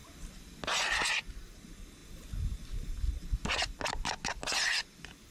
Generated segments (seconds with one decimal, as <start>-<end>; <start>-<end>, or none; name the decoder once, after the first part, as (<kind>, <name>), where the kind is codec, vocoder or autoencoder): none